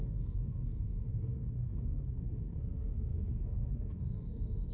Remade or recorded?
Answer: remade